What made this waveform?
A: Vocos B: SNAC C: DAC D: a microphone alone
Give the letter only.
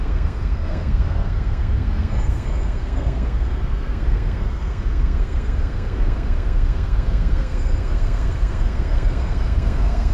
B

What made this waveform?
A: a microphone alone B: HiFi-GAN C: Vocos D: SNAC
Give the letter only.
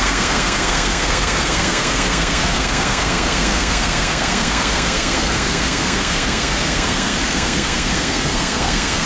D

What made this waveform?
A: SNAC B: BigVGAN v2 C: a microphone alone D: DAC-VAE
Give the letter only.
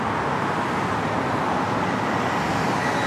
C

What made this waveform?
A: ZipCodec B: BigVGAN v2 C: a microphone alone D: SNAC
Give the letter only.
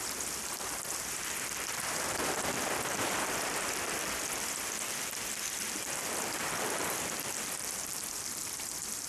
B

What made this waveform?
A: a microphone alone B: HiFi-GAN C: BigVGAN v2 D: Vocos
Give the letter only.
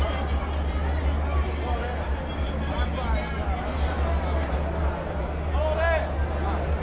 A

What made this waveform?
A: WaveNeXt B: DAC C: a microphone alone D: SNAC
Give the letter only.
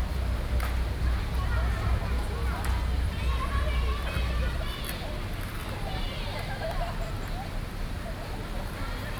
C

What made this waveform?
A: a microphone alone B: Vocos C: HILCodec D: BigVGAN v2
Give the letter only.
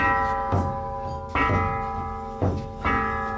A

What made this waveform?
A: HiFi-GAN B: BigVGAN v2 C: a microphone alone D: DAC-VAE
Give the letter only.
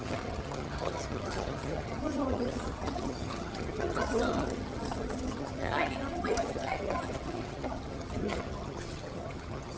A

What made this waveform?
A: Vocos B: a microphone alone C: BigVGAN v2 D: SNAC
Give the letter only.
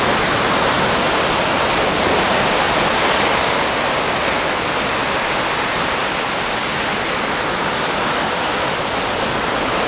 B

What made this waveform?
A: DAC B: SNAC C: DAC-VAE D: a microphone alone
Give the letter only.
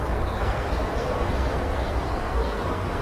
B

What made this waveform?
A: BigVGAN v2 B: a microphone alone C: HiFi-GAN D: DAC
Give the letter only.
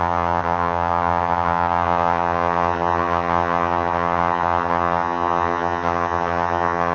C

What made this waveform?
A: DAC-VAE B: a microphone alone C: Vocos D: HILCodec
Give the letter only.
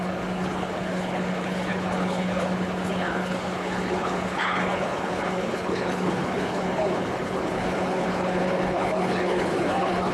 D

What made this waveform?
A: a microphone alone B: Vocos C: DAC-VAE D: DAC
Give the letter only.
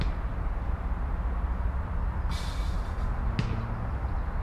A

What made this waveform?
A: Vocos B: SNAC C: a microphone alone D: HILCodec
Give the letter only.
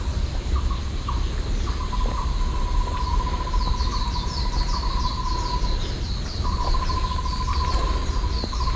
C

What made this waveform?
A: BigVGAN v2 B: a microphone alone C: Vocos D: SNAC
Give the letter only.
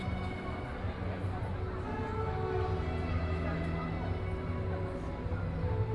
B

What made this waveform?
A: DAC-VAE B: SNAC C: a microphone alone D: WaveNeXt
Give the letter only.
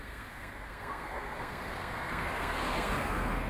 B